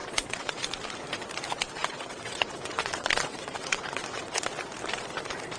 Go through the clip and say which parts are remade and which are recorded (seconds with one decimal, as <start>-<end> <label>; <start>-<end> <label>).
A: 0.0-0.6 remade; 0.6-1.8 recorded; 1.8-4.5 remade; 4.5-5.6 recorded